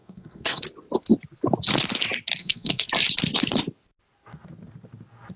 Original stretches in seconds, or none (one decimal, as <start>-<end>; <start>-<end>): 0.6-2.4; 2.9-5.4